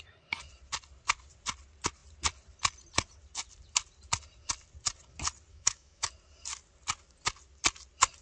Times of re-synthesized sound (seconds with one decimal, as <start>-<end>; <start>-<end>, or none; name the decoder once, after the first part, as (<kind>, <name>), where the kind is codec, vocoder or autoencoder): 5.5-6.1 (autoencoder, DAC-VAE)